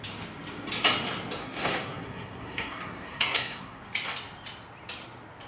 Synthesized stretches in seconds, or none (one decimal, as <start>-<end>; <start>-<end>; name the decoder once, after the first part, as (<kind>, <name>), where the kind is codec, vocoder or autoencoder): 1.4-3.8 (codec, SNAC)